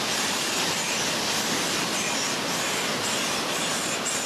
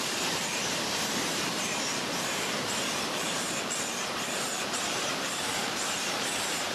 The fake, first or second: second